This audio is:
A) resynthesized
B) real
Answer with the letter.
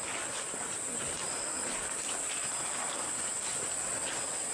B